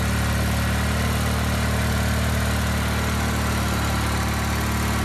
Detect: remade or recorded recorded